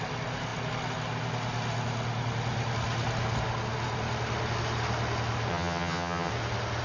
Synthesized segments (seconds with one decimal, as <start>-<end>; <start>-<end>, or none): 5.5-6.3